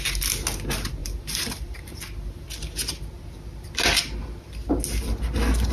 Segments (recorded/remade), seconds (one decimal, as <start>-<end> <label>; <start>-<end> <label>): 0.0-1.0 recorded; 1.0-2.0 remade; 2.0-5.7 recorded